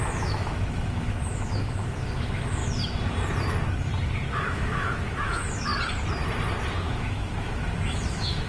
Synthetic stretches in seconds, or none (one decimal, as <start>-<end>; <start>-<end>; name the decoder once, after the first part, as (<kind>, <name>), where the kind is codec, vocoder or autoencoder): 0.0-2.6 (autoencoder, DAC-VAE); 4.5-5.7; 6.8-8.5